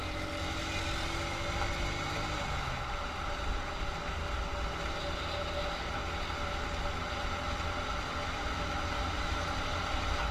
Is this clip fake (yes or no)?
no